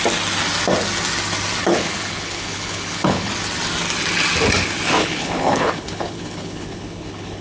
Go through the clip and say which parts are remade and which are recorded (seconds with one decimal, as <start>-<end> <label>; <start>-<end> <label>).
0.0-1.6 recorded; 1.6-3.3 remade; 3.3-5.0 recorded; 5.0-7.4 remade